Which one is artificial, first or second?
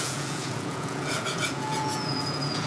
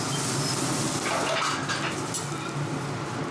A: first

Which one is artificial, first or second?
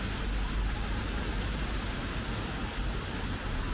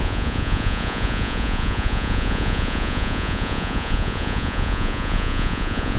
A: second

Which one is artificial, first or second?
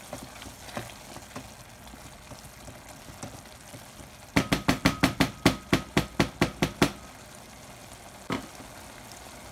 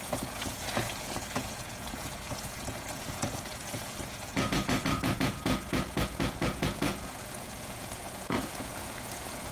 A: second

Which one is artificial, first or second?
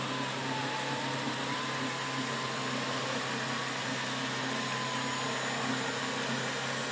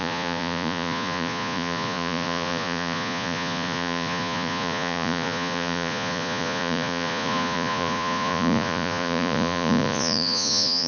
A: second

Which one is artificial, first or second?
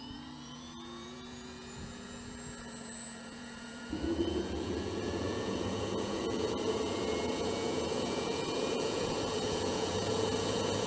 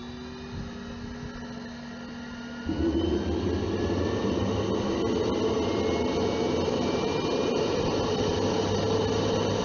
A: first